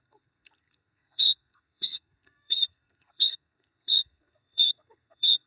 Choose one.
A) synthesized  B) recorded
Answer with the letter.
A